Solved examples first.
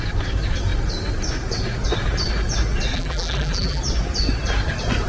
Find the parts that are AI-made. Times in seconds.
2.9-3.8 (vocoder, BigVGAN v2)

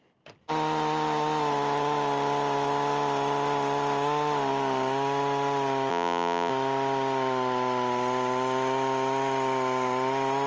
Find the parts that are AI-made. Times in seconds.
5.9-6.5 (vocoder, BigVGAN v2)